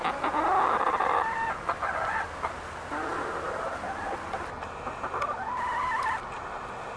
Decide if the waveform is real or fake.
real